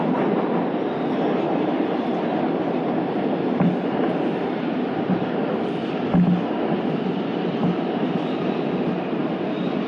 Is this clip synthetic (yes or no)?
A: no